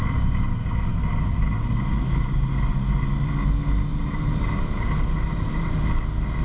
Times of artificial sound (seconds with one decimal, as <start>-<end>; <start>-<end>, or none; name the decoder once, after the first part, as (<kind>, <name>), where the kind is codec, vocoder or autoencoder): 3.9-5.8 (vocoder, BigVGAN v2)